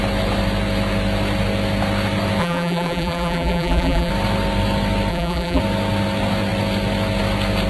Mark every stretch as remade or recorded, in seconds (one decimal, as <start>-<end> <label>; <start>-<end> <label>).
0.0-2.4 recorded; 2.4-4.1 remade; 4.1-5.1 recorded; 5.1-5.6 remade; 5.6-7.7 recorded